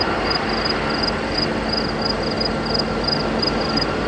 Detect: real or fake real